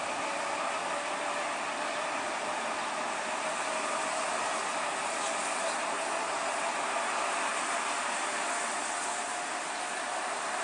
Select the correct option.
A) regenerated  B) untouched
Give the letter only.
B